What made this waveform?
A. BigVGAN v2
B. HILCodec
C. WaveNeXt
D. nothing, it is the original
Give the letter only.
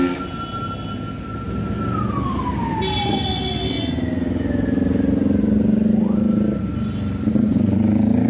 D